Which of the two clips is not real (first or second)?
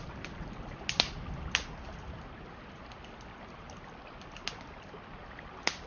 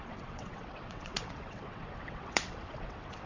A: second